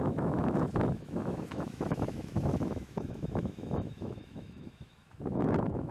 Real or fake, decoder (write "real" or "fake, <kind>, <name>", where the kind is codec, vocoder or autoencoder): fake, autoencoder, DAC-VAE